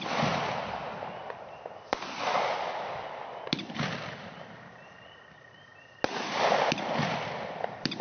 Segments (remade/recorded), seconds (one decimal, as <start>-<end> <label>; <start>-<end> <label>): 0.0-8.0 recorded